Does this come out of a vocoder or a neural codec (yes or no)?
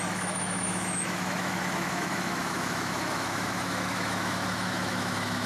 yes